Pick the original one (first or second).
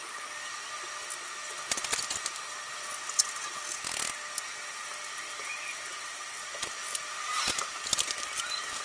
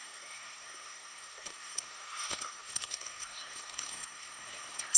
first